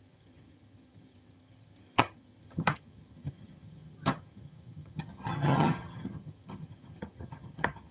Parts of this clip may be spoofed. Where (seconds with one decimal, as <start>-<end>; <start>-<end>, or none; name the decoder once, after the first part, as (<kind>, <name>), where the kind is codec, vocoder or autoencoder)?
0.0-7.9 (vocoder, HiFi-GAN)